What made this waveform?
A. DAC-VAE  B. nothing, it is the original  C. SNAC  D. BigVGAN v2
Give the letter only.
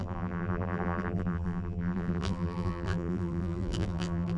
D